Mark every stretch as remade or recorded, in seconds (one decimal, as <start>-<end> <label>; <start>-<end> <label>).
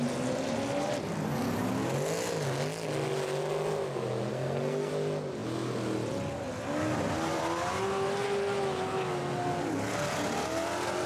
0.0-4.3 recorded; 4.3-4.9 remade; 4.9-11.1 recorded